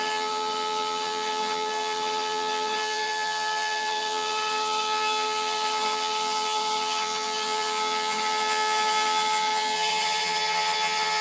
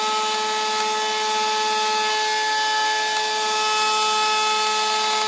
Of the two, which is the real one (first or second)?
second